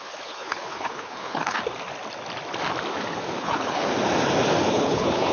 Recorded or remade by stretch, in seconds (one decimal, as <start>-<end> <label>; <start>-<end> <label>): 0.0-1.6 remade; 1.6-3.4 recorded; 3.4-3.9 remade; 3.9-4.7 recorded; 4.7-5.3 remade